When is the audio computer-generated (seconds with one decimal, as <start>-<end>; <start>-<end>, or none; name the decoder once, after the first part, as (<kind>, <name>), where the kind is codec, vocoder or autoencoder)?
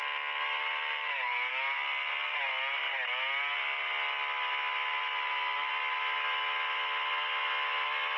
none